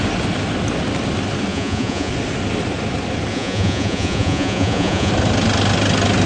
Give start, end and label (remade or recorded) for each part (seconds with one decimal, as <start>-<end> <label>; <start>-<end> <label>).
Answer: 0.0-1.5 recorded; 1.5-2.1 remade; 2.1-3.3 recorded; 3.3-5.1 remade; 5.1-6.3 recorded